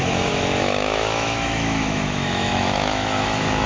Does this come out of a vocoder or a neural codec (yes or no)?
yes